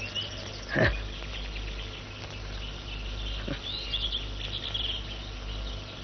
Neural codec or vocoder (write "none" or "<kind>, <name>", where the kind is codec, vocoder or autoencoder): none